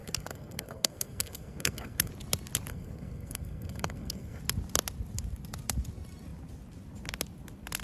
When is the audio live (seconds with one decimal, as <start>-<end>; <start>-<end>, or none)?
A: 2.1-2.7; 4.4-7.8

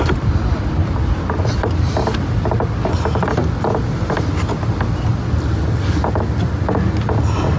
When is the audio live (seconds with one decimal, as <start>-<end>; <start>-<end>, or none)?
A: 0.0-7.6

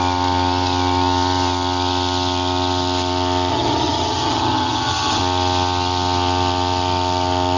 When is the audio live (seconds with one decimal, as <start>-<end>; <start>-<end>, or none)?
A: 0.0-3.5; 5.2-7.6

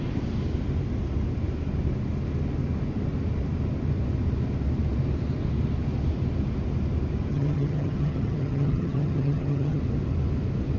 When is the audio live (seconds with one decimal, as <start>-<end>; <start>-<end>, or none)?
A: 0.0-7.3; 9.8-10.8

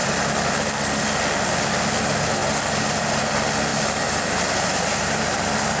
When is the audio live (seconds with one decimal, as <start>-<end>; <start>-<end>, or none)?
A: 0.0-5.8

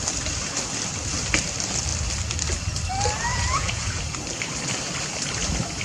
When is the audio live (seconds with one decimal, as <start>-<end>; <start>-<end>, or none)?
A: 0.0-3.3; 4.0-5.8

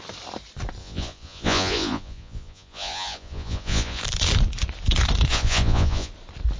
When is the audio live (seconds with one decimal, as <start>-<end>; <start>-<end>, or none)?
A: 0.0-0.8; 4.0-5.3; 6.1-6.6